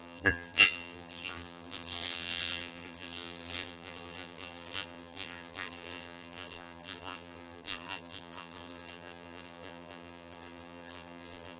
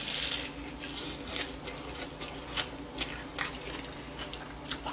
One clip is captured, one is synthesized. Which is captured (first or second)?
second